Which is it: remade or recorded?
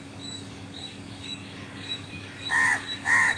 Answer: remade